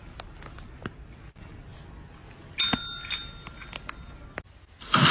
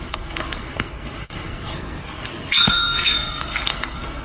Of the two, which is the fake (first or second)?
second